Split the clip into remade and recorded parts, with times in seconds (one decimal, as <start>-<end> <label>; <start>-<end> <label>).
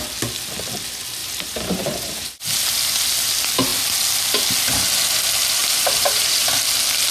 0.0-1.2 recorded; 1.2-2.4 remade; 2.4-5.6 recorded; 5.6-6.5 remade; 6.5-7.1 recorded